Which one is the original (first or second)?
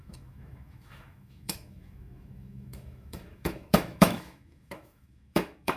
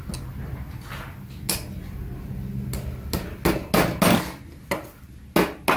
second